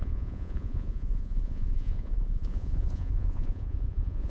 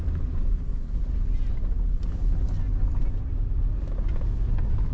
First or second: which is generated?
first